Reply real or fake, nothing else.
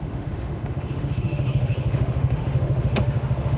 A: fake